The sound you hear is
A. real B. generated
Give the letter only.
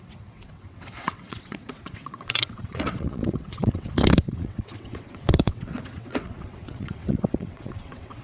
B